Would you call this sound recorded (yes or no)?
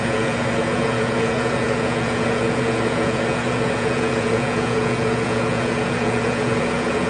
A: no